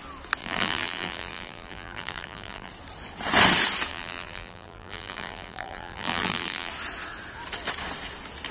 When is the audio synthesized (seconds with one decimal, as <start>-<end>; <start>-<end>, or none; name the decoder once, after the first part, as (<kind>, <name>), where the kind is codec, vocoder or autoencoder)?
0.4-2.7 (vocoder, BigVGAN v2); 3.9-6.7